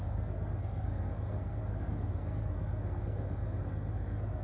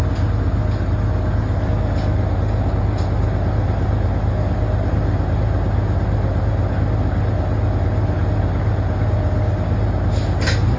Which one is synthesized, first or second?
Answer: first